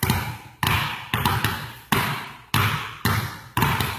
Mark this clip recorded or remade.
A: remade